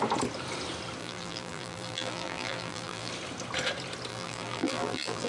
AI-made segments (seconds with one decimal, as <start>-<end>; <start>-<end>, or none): 1.0-3.1; 4.1-5.3